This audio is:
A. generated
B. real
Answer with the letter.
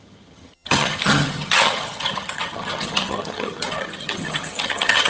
A